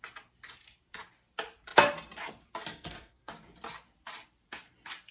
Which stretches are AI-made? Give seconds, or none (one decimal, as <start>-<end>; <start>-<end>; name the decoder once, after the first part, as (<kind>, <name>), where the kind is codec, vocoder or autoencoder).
2.7-3.3 (codec, SNAC)